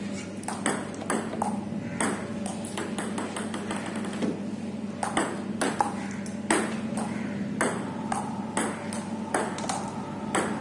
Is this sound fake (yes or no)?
no